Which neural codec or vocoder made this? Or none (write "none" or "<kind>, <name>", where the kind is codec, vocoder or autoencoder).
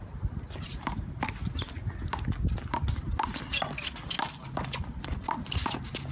none